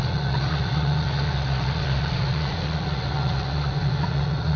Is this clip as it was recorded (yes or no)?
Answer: no